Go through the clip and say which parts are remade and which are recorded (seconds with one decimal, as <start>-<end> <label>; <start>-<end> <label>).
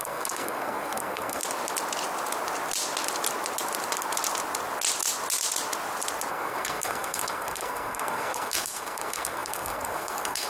0.0-1.4 remade; 1.4-6.3 recorded; 6.3-10.5 remade